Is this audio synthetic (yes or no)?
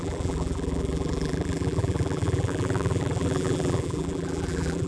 yes